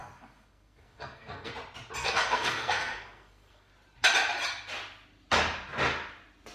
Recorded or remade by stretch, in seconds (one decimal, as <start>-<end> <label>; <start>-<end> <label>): 0.0-1.5 remade; 1.5-2.0 recorded; 2.0-3.7 remade; 3.7-6.5 recorded